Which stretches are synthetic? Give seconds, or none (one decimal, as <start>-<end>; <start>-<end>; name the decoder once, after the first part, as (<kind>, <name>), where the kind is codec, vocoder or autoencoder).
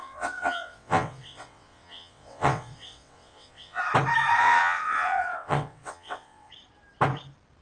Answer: 0.0-3.8 (vocoder, WaveNeXt); 4.4-6.5